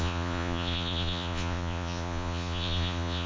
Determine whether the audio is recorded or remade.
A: remade